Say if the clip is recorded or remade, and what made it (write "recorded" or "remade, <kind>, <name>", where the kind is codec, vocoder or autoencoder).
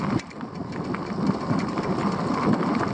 remade, vocoder, BigVGAN v2